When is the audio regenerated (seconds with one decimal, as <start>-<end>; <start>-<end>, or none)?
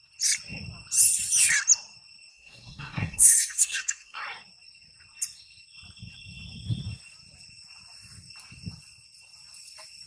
2.3-4.2